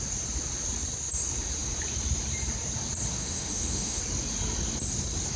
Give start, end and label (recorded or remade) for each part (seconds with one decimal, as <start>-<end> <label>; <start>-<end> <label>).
0.0-3.2 recorded; 3.2-4.0 remade; 4.0-5.4 recorded